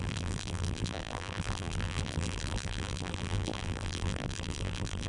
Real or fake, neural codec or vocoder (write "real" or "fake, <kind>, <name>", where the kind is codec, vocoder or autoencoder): fake, vocoder, BigVGAN v2